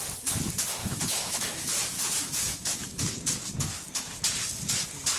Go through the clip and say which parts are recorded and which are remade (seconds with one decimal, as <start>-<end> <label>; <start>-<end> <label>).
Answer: 0.0-0.8 recorded; 0.8-3.0 remade; 3.0-5.2 recorded